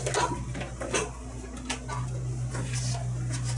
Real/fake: real